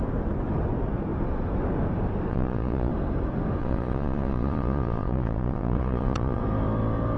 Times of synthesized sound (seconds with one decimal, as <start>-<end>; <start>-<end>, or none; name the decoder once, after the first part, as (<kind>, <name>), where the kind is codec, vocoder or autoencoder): 2.3-2.9 (vocoder, Vocos); 3.6-6.4